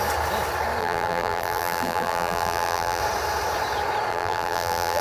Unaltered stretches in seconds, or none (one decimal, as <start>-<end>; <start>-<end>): 0.0-0.8; 3.0-4.1